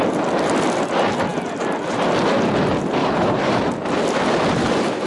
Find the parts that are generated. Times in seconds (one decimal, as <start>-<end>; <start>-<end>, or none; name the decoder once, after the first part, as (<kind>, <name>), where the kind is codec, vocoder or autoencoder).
3.0-3.5 (codec, HILCodec)